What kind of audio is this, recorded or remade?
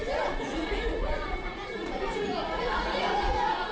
remade